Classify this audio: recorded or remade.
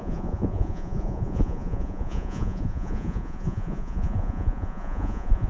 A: remade